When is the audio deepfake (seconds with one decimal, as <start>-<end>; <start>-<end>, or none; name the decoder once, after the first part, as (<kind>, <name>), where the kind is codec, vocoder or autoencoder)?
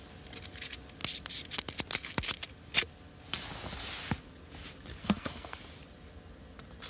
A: 5.0-5.6 (codec, SNAC)